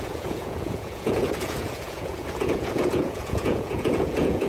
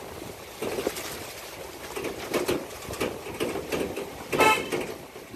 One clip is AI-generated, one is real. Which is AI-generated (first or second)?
first